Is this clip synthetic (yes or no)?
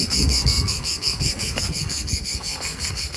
yes